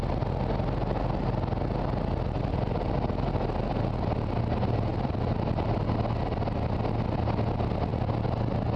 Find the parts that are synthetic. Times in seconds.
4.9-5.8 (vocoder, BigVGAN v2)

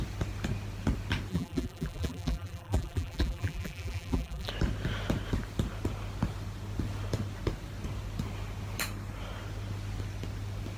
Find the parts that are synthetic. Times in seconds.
1.3-4.5 (vocoder, BigVGAN v2)

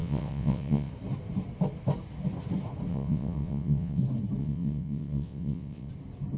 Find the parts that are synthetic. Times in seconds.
0.0-0.9 (vocoder, WaveNeXt); 2.9-4.0; 4.4-5.9

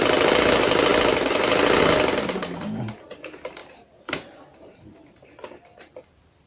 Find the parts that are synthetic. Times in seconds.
3.6-5.9 (vocoder, BigVGAN v2)

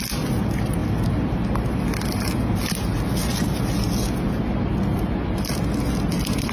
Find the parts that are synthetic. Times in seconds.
4.9-5.5 (vocoder, BigVGAN v2)

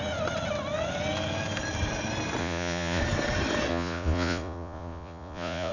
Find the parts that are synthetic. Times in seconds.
2.4-3.0 (vocoder, Vocos); 3.7-5.7